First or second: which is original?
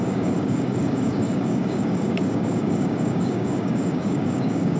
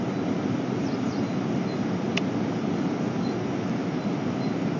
second